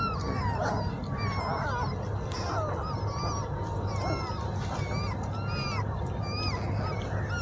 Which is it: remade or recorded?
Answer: recorded